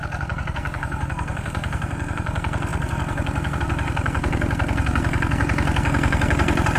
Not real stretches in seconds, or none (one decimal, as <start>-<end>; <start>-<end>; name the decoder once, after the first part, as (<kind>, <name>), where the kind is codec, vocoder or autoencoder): 0.0-6.8 (codec, SNAC)